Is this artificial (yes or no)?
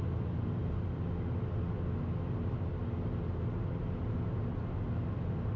no